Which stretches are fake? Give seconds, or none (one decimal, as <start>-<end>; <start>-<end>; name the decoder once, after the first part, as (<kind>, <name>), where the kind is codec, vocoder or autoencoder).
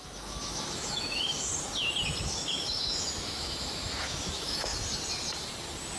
0.0-1.5 (autoencoder, DAC-VAE); 2.2-4.7